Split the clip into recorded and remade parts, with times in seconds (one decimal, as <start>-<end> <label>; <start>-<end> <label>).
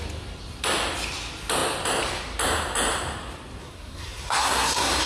0.0-3.6 recorded; 3.6-5.1 remade